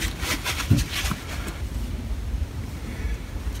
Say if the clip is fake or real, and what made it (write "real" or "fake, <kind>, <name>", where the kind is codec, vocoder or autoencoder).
real